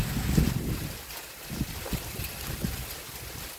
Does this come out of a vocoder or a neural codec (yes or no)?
no